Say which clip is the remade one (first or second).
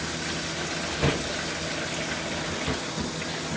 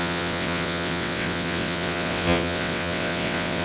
second